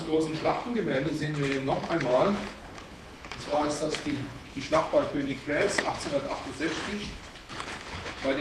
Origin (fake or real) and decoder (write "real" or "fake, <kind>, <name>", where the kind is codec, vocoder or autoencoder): fake, codec, HILCodec